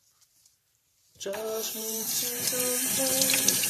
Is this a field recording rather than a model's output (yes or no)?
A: no